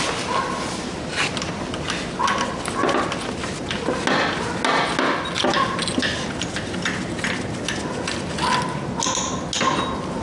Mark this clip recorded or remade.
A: recorded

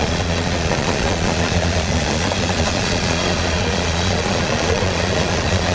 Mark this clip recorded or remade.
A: remade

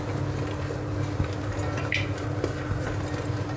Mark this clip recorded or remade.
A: recorded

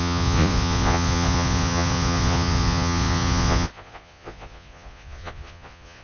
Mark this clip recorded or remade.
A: remade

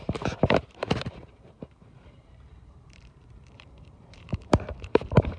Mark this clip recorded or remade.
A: remade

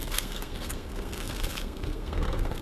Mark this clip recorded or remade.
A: remade